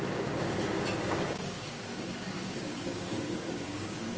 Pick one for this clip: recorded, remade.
remade